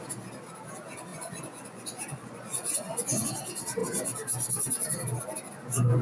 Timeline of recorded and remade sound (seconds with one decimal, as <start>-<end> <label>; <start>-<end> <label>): 0.0-1.1 recorded; 1.1-3.3 remade; 3.3-6.0 recorded